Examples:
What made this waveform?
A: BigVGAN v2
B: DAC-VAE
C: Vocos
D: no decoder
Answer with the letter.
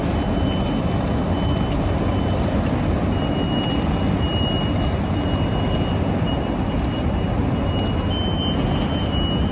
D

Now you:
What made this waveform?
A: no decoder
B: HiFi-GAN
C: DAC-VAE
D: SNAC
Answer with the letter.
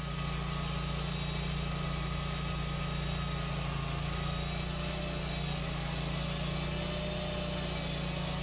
A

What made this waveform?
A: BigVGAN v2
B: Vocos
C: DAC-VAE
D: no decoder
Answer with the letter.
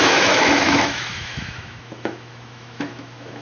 C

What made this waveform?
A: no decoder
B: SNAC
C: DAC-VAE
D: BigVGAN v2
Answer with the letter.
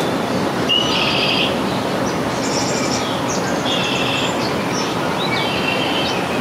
A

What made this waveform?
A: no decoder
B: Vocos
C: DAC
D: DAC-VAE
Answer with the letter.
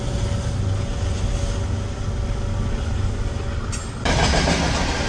A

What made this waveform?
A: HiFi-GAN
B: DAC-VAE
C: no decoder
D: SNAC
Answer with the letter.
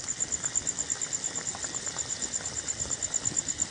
C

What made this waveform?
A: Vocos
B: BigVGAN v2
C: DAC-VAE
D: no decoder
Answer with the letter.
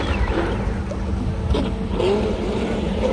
D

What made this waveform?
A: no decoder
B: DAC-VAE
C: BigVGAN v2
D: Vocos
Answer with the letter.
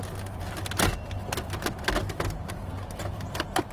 A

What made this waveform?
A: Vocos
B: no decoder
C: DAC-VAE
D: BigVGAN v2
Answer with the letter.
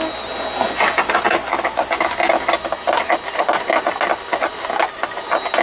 B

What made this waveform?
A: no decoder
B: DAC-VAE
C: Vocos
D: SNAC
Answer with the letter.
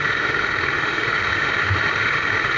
B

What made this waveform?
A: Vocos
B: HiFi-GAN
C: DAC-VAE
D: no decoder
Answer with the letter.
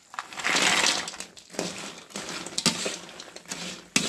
D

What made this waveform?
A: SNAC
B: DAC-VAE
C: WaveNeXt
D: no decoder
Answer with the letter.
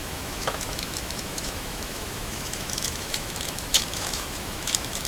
B